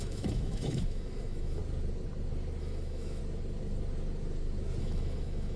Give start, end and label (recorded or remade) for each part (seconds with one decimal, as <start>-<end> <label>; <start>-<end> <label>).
0.0-1.6 remade; 1.6-2.6 recorded; 2.6-3.2 remade; 3.2-4.8 recorded; 4.8-5.6 remade